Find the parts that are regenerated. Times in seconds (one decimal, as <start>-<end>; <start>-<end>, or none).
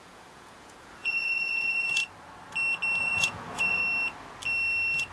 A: 0.0-2.0; 3.0-3.8